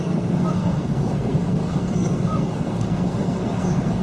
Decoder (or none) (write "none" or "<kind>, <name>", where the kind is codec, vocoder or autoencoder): codec, SNAC